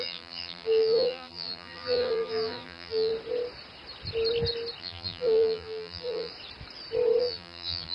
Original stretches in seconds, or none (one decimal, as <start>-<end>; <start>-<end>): 3.1-4.8; 6.3-7.2